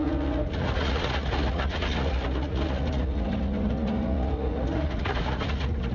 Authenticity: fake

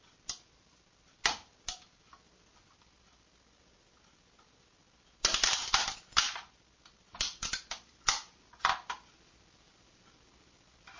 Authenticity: real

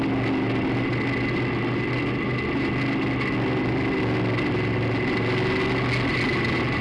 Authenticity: real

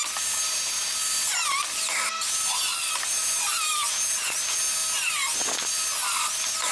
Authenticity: real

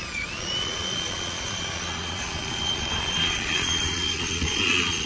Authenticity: fake